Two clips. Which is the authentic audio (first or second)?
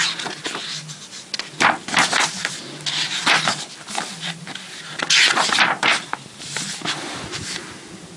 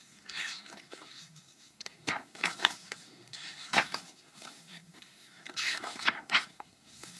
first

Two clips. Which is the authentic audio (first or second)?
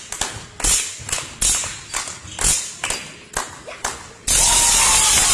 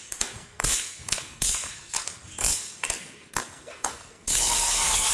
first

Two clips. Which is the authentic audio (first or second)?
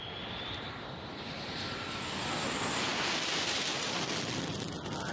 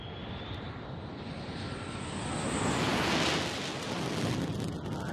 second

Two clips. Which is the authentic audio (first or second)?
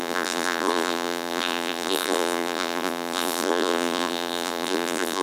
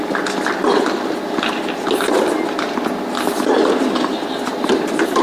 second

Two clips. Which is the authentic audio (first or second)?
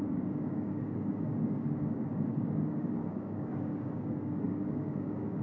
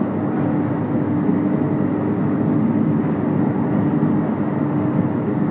second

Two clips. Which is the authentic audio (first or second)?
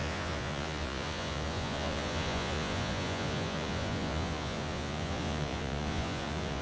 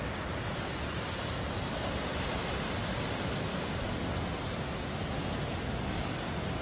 second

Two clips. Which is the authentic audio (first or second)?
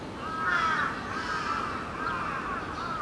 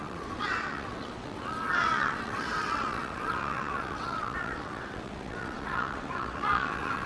first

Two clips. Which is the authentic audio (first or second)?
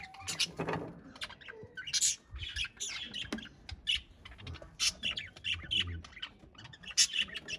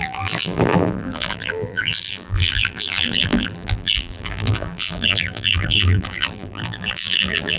first